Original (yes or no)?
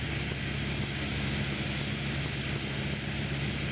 yes